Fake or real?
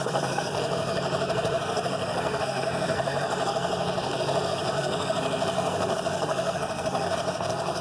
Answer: fake